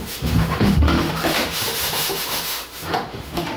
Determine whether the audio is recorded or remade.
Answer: remade